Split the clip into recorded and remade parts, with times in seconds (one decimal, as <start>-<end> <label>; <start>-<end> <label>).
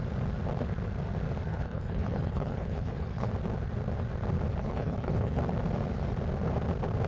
0.0-1.5 recorded; 1.5-3.3 remade; 3.3-4.6 recorded; 4.6-5.4 remade; 5.4-7.1 recorded